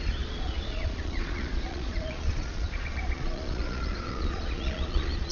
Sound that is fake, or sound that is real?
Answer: fake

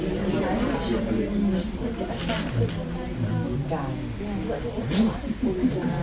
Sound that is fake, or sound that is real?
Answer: real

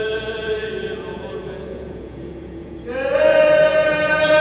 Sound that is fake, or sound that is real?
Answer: fake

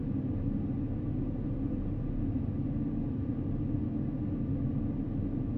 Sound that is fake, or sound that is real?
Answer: real